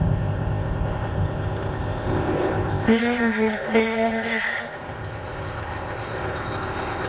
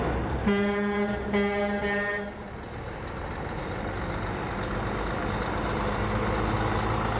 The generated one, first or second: first